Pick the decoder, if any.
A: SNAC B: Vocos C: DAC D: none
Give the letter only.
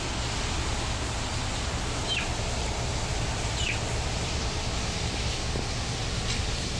D